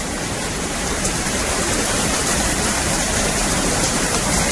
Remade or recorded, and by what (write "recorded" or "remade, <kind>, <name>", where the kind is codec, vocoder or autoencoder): remade, vocoder, BigVGAN v2